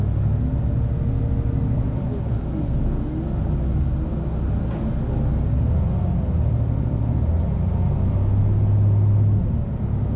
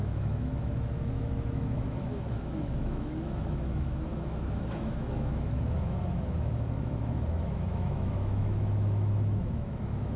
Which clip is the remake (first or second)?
second